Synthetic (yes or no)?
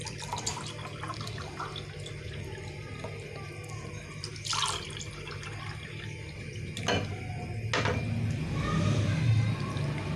no